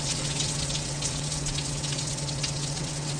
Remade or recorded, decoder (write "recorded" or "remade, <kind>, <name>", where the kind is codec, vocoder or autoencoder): remade, vocoder, WaveNeXt